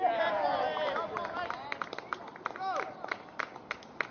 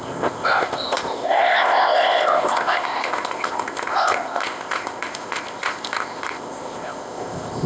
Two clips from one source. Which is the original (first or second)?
first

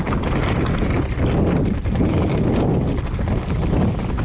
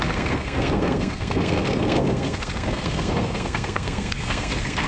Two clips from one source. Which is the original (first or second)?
first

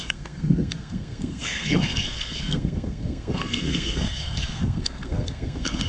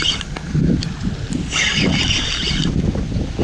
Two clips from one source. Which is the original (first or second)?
second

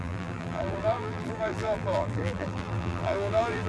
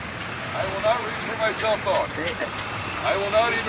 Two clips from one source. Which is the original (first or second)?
second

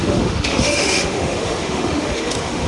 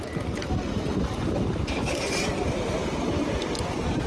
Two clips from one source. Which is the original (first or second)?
second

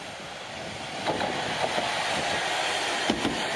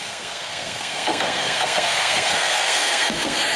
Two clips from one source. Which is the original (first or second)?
first